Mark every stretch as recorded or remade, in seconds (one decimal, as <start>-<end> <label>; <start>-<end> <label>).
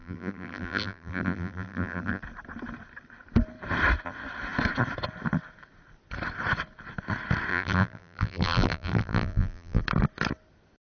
0.0-2.2 remade; 2.2-7.5 recorded; 7.5-9.8 remade; 9.8-10.9 recorded